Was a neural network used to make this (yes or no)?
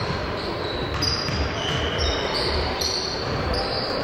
yes